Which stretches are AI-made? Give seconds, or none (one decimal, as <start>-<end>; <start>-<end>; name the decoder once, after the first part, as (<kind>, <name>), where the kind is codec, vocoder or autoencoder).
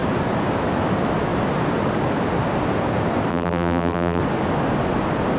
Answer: 3.3-4.2 (vocoder, BigVGAN v2)